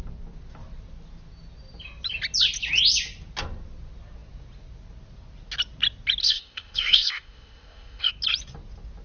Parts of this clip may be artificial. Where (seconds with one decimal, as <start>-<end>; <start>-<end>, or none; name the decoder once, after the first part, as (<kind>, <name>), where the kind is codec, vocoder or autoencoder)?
6.2-8.1 (codec, ZipCodec)